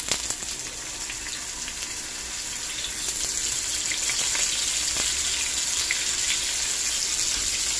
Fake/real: real